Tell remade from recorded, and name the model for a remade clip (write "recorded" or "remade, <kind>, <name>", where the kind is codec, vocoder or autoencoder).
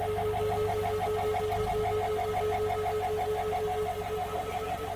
recorded